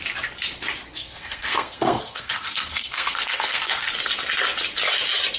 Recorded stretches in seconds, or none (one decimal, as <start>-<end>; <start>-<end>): 0.0-1.0; 3.9-5.4